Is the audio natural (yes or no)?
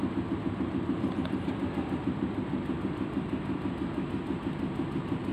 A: yes